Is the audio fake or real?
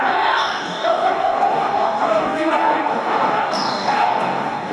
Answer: fake